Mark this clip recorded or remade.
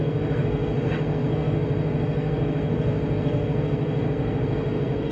remade